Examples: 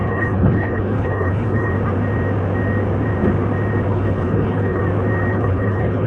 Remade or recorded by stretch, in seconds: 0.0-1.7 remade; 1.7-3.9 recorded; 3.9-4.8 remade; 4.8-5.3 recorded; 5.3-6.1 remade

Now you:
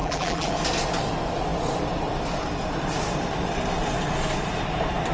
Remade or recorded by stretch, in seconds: 0.0-0.5 remade; 0.5-5.1 recorded

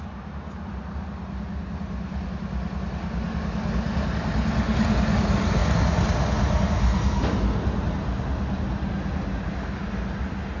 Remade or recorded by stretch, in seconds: 0.0-10.6 recorded